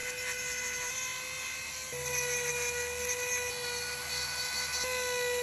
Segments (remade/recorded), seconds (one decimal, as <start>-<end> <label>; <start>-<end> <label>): 0.0-5.4 recorded